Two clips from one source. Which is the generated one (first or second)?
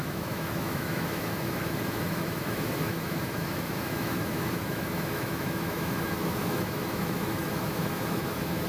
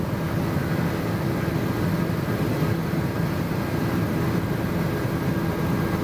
first